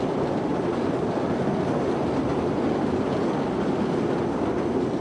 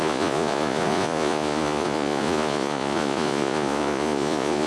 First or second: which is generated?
second